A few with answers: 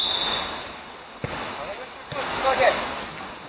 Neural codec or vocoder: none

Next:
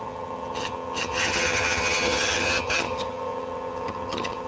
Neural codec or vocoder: vocoder, HiFi-GAN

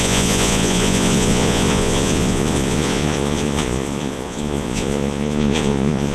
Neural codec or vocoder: vocoder, Vocos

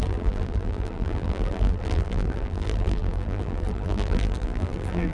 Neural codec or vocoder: vocoder, BigVGAN v2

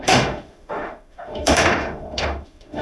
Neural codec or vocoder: autoencoder, DAC-VAE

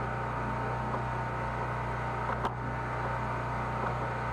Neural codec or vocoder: none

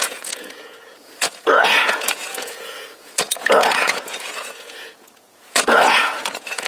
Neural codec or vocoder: vocoder, Vocos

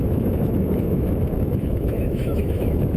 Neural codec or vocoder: autoencoder, DAC-VAE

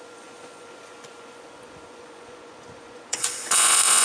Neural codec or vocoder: vocoder, Vocos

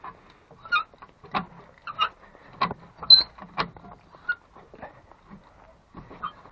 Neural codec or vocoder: none